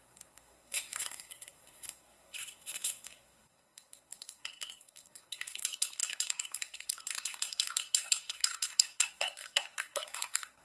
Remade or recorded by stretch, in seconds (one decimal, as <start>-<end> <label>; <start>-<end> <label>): 0.0-10.6 remade